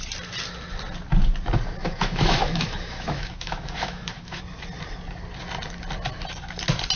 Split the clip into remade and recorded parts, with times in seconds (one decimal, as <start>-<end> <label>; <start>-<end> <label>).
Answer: 0.0-1.8 recorded; 1.8-4.4 remade; 4.4-7.0 recorded